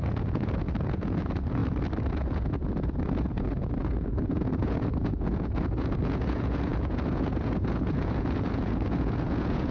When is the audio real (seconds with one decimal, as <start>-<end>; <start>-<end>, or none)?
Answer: 1.6-2.1